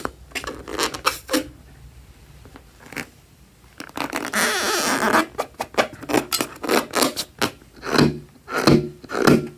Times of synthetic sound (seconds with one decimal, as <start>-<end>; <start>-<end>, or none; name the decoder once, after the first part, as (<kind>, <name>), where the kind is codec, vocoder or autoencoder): none